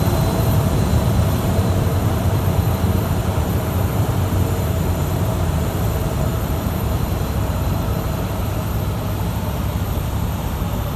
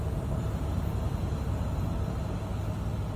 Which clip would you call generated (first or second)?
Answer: first